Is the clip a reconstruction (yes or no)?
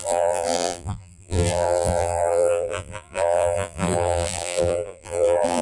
yes